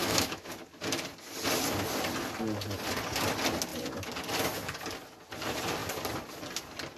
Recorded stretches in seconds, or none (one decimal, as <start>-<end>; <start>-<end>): 0.5-7.0